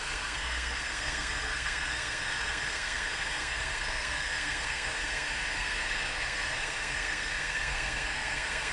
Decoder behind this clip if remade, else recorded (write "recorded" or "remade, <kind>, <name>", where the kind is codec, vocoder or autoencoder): remade, codec, SNAC